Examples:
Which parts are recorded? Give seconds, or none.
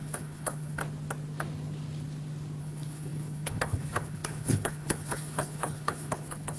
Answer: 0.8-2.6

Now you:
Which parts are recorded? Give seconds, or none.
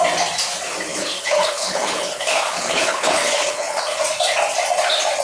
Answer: 0.0-0.9; 4.0-5.2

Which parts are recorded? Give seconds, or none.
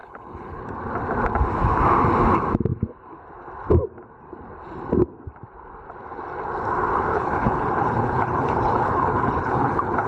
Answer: 0.6-7.1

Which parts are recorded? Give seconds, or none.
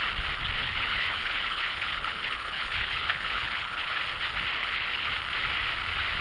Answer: 0.0-0.6; 4.0-4.6; 5.1-6.2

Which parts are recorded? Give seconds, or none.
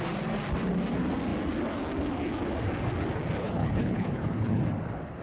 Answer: 0.0-3.4; 4.6-5.2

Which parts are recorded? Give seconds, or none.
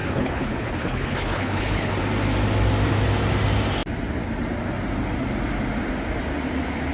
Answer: 1.9-6.9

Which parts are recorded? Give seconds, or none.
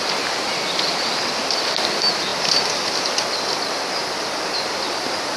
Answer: 0.0-5.4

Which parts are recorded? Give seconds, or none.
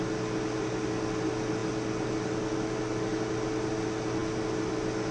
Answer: 0.0-5.1